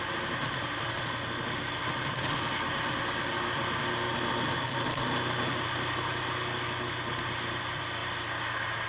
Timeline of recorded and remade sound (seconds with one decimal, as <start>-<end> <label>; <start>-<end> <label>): 0.0-8.9 recorded